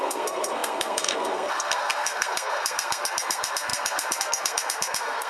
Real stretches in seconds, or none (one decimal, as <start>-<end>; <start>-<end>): none